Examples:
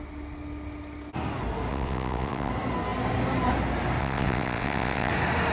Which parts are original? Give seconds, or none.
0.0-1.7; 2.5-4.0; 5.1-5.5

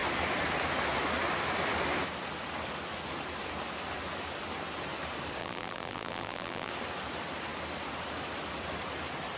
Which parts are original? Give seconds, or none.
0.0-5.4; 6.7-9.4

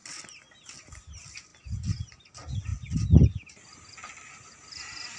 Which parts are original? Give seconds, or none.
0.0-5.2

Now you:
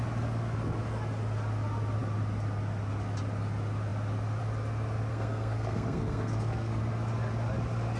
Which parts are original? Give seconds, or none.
0.0-5.1; 6.8-8.0

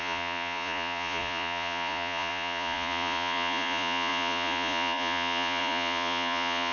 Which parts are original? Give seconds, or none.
none

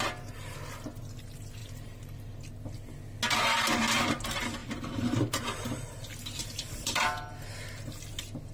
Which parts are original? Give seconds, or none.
0.0-1.6; 2.5-4.6; 7.1-8.5

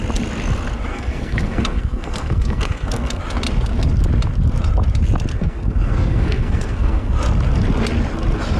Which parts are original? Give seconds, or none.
0.0-0.9; 3.2-5.3; 7.2-8.6

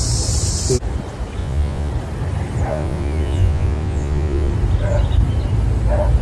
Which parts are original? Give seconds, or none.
0.0-1.4; 1.9-2.7; 4.5-6.2